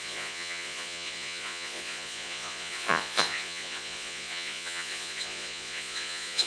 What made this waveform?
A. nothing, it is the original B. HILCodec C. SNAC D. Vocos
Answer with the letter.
D